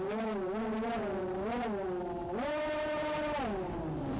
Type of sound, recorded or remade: recorded